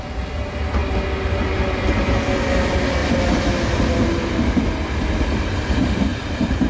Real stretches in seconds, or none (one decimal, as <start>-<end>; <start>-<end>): 0.0-6.7